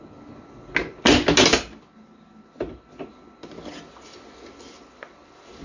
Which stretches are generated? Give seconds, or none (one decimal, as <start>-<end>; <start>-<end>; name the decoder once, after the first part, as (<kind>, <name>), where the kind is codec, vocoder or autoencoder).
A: none